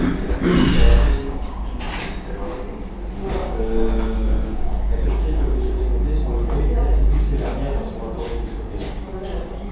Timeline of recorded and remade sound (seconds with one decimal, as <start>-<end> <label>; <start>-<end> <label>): 0.0-0.9 recorded; 0.9-1.8 remade; 1.8-3.4 recorded; 3.4-5.8 remade; 5.8-9.7 recorded